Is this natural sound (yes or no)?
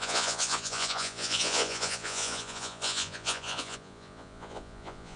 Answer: no